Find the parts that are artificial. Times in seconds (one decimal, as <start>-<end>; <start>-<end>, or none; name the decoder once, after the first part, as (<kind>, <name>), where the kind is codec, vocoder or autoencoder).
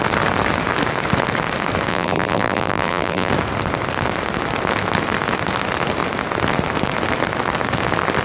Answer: 1.9-3.3 (vocoder, BigVGAN v2)